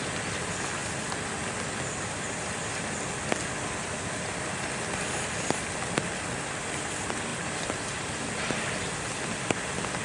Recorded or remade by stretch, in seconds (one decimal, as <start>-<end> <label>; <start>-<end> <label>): 0.0-10.0 recorded